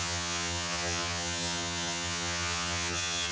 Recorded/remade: remade